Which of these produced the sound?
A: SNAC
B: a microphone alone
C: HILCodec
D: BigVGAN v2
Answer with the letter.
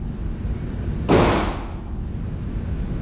B